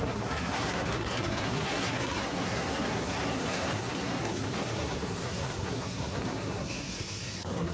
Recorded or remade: remade